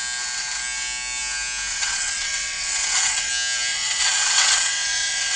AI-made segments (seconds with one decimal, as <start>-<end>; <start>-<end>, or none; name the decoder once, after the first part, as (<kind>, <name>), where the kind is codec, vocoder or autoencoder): 1.7-3.3 (vocoder, WaveNeXt); 3.7-5.4

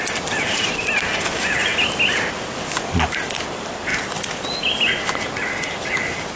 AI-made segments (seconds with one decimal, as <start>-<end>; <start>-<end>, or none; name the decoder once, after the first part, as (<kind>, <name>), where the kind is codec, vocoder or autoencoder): none

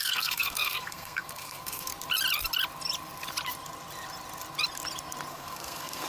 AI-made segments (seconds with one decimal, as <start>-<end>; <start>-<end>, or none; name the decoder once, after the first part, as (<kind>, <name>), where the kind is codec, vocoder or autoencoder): 0.0-1.9 (codec, SNAC); 5.3-6.1

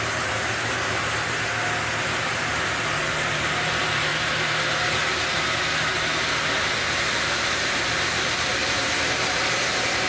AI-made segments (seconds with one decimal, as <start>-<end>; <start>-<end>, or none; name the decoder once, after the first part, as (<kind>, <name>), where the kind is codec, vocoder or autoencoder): 0.0-1.0 (vocoder, BigVGAN v2); 2.0-4.1; 7.1-10.1

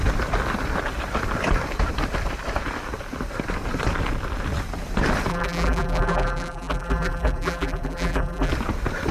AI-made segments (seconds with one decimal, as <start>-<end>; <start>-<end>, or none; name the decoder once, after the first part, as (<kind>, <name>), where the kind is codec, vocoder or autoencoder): 5.3-8.5 (vocoder, BigVGAN v2)

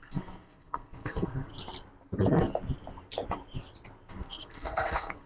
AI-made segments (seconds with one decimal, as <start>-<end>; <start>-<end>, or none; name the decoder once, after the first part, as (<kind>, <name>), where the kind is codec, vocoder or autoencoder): 0.0-1.5 (codec, SNAC); 4.1-5.3